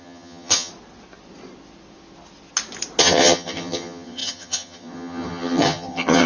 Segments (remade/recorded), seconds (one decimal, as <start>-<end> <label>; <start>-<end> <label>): 0.0-0.7 remade; 0.7-3.0 recorded; 3.0-6.3 remade